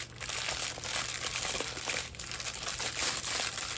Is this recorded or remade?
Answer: recorded